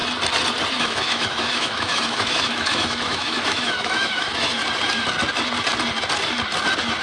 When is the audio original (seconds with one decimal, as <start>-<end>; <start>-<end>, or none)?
0.0-0.7; 4.6-7.0